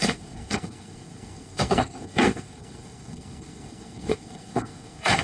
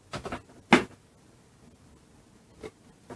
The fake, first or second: first